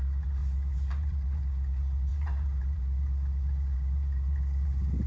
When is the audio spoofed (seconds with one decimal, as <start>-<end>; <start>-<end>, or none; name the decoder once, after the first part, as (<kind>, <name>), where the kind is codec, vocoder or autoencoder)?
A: 0.4-1.4 (vocoder, BigVGAN v2); 2.1-2.8

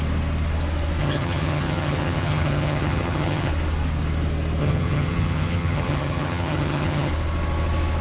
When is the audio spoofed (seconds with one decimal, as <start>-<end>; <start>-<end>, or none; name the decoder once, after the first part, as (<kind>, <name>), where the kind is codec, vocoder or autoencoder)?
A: 1.0-3.5 (vocoder, HiFi-GAN); 4.6-7.1

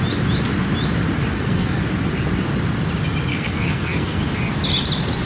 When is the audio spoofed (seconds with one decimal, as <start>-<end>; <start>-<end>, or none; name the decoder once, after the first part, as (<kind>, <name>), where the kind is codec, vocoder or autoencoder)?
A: 1.3-1.8 (codec, SNAC); 3.3-4.2

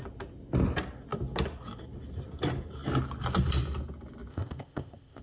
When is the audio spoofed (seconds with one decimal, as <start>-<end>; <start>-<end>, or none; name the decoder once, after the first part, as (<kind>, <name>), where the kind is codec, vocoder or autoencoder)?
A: 4.3-5.2 (codec, ZipCodec)

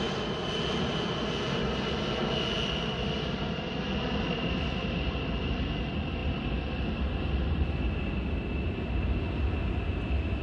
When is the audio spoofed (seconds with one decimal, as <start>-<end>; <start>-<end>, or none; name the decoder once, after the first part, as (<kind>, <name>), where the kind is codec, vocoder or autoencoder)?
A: none